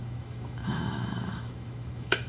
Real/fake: fake